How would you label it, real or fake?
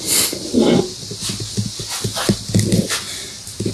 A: real